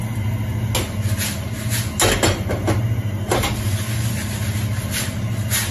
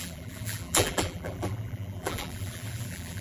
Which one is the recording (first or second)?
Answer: first